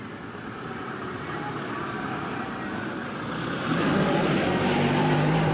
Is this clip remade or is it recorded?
remade